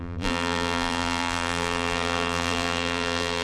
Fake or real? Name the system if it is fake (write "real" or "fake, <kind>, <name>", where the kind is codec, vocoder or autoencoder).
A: fake, vocoder, BigVGAN v2